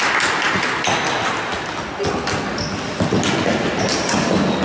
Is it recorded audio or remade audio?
recorded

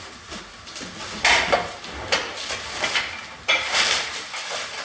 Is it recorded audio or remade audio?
recorded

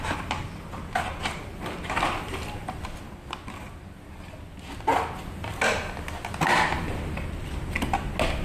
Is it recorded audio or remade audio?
recorded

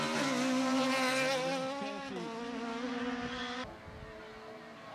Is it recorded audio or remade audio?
recorded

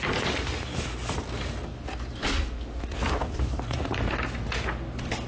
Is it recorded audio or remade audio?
recorded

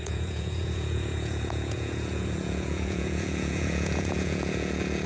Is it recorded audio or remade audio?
remade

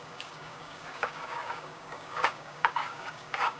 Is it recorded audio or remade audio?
remade